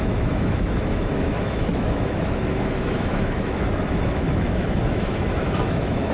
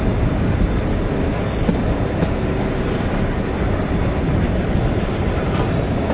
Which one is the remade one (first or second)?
first